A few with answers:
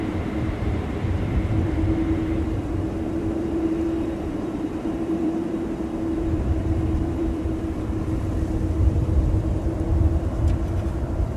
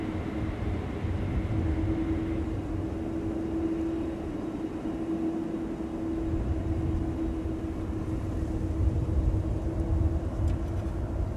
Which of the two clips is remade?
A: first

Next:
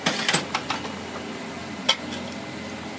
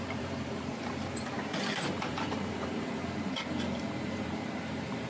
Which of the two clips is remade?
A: second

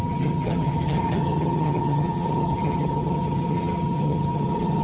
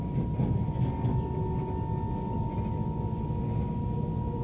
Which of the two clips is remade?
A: first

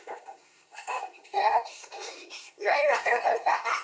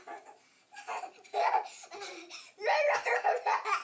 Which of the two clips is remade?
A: first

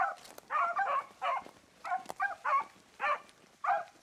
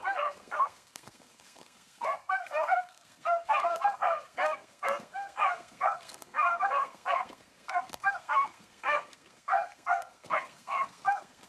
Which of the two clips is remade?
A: second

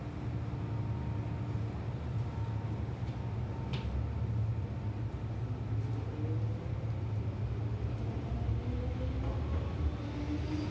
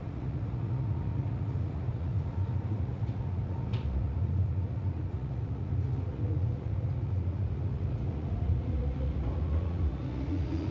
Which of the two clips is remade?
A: second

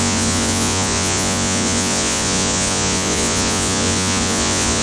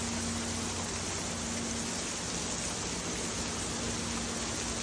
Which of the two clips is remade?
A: first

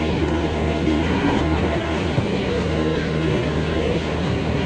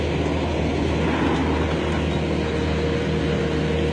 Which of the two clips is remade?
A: first